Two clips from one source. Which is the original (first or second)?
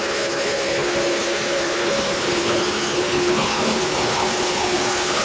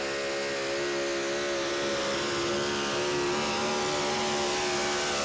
second